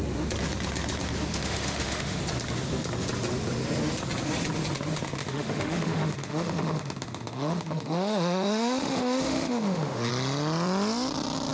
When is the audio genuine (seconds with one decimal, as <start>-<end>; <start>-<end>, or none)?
0.0-1.3; 2.2-5.2; 10.1-11.5